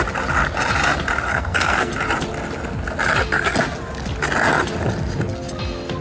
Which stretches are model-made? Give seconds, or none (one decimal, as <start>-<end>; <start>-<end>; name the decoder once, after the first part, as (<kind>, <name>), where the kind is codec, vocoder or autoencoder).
1.3-1.9 (codec, SNAC)